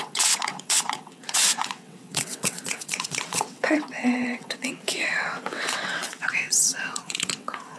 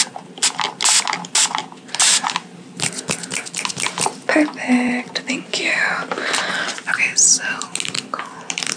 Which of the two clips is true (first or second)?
second